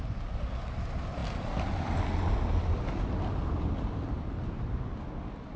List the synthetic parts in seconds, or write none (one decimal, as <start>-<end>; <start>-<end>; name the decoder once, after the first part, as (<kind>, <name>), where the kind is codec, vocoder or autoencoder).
none